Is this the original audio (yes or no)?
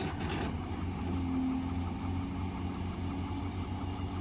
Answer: yes